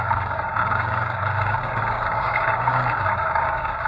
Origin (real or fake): fake